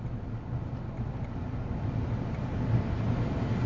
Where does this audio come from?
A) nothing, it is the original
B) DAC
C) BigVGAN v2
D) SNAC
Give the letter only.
A